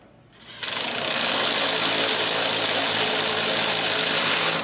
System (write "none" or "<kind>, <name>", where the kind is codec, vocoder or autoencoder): none